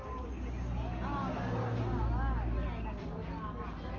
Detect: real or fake real